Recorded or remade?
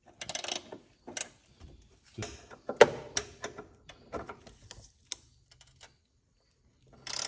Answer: recorded